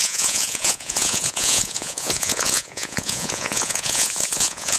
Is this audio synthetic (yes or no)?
yes